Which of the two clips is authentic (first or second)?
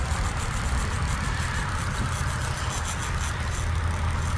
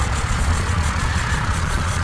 first